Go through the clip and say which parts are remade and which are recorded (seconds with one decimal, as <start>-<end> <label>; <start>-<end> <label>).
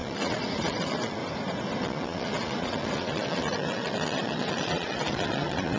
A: 0.0-1.2 remade; 1.2-1.8 recorded; 1.8-5.8 remade